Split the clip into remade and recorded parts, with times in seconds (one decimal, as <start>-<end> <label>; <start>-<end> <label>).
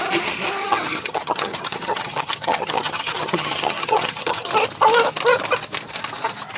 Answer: 0.0-0.6 recorded; 0.6-4.5 remade; 4.5-6.6 recorded